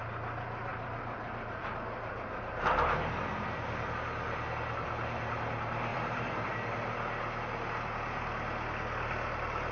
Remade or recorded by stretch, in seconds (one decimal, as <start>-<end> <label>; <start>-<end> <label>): 0.0-0.7 recorded; 0.7-2.4 remade; 2.4-5.9 recorded; 5.9-6.5 remade; 6.5-9.7 recorded